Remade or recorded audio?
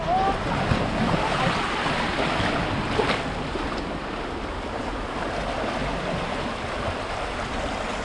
recorded